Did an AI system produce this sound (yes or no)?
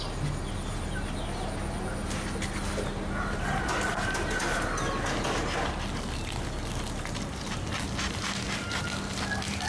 no